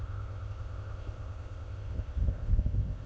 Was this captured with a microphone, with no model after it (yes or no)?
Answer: no